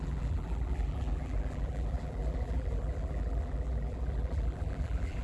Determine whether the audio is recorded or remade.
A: remade